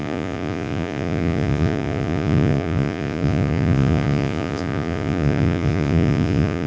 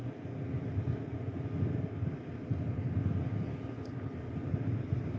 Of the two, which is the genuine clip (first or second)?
second